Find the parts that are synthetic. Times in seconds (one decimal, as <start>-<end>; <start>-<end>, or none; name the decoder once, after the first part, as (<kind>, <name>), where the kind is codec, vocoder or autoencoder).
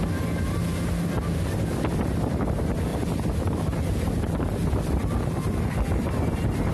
2.9-6.7 (vocoder, BigVGAN v2)